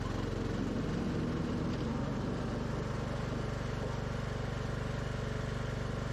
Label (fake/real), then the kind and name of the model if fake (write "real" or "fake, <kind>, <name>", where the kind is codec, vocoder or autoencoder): real